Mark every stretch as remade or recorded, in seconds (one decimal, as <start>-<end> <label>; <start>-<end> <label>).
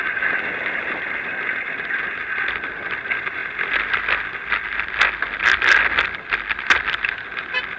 0.0-7.8 recorded